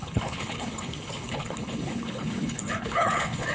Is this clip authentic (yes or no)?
no